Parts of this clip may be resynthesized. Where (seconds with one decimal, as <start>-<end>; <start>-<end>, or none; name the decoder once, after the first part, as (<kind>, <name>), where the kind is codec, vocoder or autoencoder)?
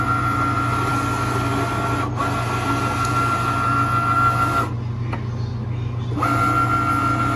none